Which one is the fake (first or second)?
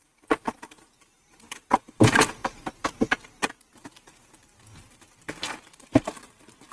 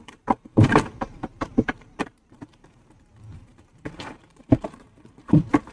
second